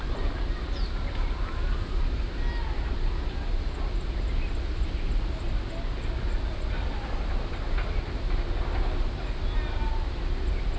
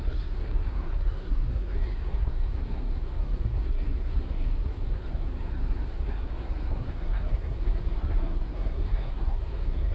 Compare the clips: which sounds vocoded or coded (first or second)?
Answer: second